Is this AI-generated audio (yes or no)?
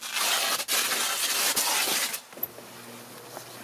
no